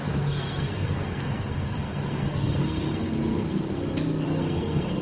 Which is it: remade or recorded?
remade